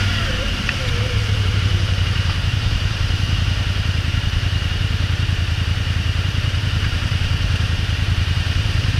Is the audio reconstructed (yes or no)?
yes